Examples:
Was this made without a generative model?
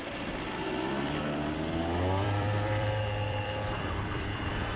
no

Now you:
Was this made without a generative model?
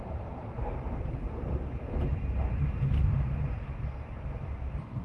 no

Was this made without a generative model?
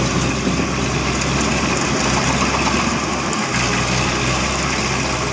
yes